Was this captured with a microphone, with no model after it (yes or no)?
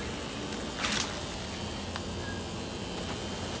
yes